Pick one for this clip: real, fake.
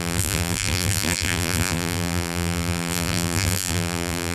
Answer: fake